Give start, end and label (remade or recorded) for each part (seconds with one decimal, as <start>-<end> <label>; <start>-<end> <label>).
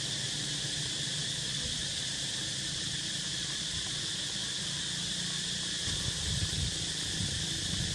0.0-7.9 remade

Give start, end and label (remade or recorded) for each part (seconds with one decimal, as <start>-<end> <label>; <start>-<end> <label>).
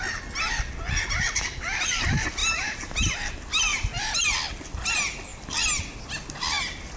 0.0-2.4 recorded; 2.4-3.1 remade; 3.1-3.7 recorded; 3.7-4.3 remade; 4.3-7.0 recorded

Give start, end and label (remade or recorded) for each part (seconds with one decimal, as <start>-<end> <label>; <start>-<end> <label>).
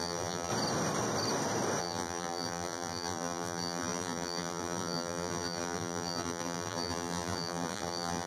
0.0-0.5 remade; 0.5-1.8 recorded; 1.8-8.3 remade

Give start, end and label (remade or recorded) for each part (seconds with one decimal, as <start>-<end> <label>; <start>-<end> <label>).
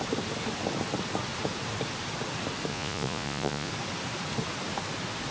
0.0-2.7 recorded; 2.7-3.7 remade; 3.7-5.3 recorded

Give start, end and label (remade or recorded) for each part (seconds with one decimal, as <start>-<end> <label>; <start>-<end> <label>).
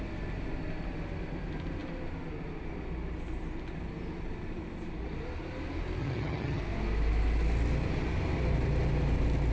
0.0-6.0 recorded; 6.0-6.6 remade; 6.6-9.5 recorded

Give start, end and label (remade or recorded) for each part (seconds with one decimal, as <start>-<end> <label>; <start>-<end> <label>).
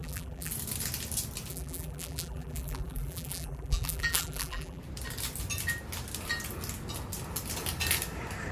0.0-0.5 remade; 0.5-1.5 recorded; 1.5-4.8 remade; 4.8-8.5 recorded